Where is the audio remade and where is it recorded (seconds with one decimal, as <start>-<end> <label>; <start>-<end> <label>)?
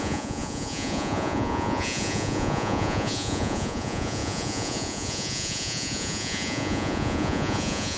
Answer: 0.0-8.0 remade